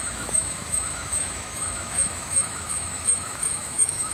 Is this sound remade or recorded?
remade